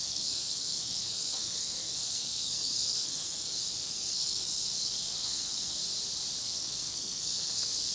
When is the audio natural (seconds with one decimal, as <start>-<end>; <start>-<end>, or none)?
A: 5.8-6.4